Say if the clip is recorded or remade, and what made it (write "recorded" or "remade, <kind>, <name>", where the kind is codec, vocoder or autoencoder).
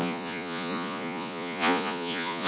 remade, vocoder, Vocos